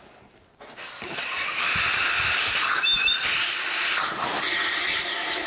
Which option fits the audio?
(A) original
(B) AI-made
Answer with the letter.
A